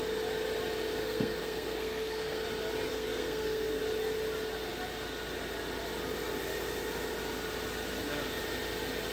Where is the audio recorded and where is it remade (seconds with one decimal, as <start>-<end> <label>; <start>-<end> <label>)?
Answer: 0.0-1.0 recorded; 1.0-2.4 remade; 2.4-2.9 recorded; 2.9-3.8 remade; 3.8-9.1 recorded